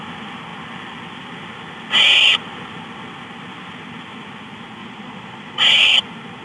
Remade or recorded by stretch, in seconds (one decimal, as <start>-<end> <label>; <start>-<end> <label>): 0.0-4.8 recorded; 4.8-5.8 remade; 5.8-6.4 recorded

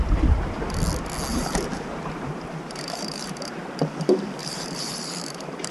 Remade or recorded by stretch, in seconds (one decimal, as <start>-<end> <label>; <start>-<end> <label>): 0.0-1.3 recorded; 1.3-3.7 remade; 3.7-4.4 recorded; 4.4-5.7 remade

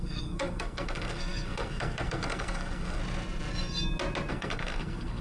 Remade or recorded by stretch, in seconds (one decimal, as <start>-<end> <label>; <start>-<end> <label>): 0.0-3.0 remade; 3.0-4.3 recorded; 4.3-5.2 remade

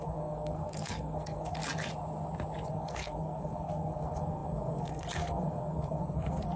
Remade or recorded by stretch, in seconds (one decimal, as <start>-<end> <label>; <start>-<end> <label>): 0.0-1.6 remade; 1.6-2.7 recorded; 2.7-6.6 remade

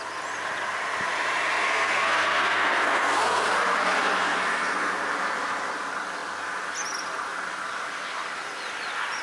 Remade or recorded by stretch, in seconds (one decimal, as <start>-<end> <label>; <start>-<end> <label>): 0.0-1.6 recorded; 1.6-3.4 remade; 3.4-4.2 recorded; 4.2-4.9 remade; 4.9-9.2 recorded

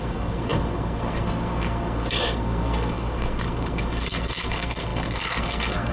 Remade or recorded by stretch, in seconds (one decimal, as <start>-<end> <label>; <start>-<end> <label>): 0.0-5.9 remade